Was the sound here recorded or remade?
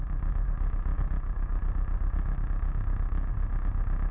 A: recorded